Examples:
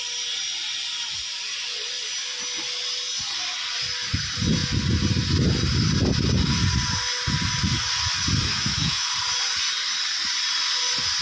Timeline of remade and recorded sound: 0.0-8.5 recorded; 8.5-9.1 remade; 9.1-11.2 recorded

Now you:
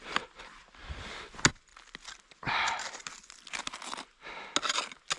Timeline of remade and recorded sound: 0.0-5.2 recorded

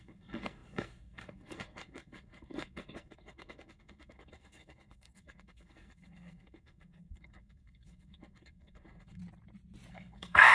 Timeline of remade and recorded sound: 0.0-9.2 remade; 9.2-9.9 recorded; 9.9-10.5 remade

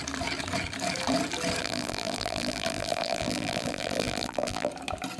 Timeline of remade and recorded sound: 0.0-1.6 recorded; 1.6-4.7 remade; 4.7-5.2 recorded

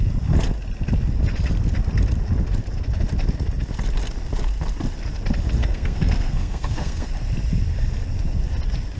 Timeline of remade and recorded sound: 0.0-5.6 recorded; 5.6-7.1 remade; 7.1-9.0 recorded

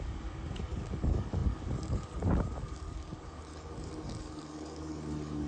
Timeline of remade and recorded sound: 0.0-5.5 remade